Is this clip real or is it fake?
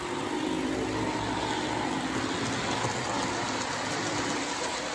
real